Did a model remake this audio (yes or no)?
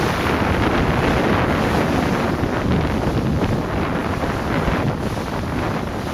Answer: no